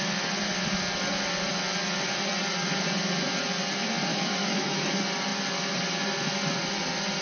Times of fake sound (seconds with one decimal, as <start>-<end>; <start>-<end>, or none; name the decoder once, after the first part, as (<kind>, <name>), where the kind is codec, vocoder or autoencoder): 4.1-4.8 (autoencoder, DAC-VAE)